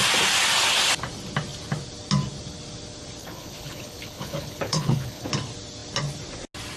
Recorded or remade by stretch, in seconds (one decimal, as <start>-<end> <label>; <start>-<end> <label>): 0.0-3.2 recorded; 3.2-5.3 remade; 5.3-6.8 recorded